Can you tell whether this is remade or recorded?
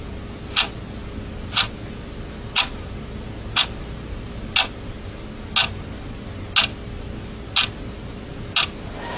recorded